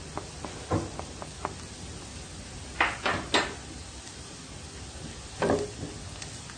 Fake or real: real